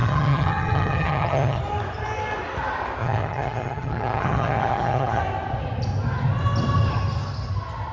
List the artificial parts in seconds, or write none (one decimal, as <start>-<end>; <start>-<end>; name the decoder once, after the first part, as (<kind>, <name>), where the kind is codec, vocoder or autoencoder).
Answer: 0.0-1.6 (vocoder, HiFi-GAN); 3.0-5.2